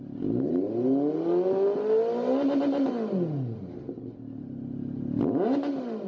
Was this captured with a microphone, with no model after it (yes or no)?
yes